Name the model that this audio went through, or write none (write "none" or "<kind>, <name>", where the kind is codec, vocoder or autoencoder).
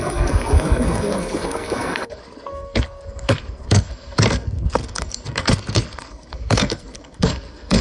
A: codec, SNAC